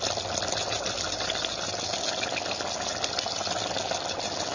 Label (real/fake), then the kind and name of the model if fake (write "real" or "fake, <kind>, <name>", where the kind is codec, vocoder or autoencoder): real